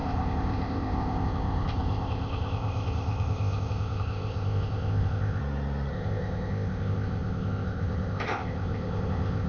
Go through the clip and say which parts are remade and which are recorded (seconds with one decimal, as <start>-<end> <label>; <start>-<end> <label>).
0.0-5.4 remade; 5.4-5.9 recorded; 5.9-9.5 remade